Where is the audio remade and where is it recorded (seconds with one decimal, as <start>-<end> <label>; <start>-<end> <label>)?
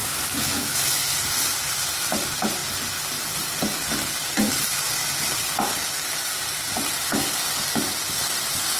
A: 0.0-1.0 remade; 1.0-8.8 recorded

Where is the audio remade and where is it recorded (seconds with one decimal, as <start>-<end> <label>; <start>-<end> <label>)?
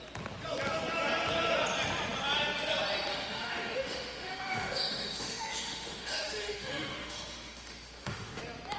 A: 0.0-3.1 recorded; 3.1-8.4 remade; 8.4-8.8 recorded